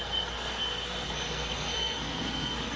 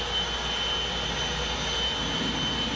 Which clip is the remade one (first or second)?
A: first